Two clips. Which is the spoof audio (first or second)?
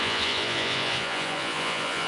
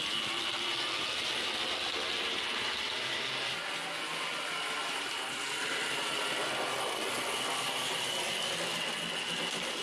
first